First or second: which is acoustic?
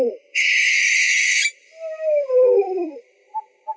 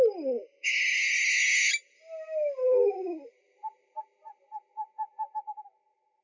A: second